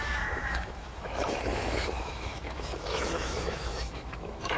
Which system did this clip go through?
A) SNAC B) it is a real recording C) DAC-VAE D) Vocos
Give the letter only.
C